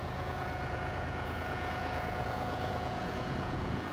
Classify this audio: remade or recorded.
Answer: remade